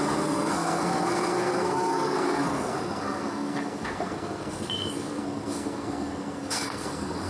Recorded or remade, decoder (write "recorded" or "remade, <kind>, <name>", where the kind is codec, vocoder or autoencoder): remade, codec, SNAC